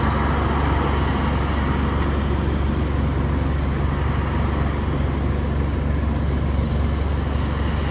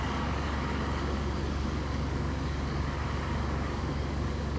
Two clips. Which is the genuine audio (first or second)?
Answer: first